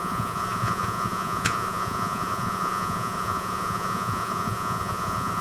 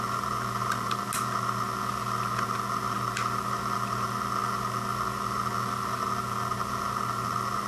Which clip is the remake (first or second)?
first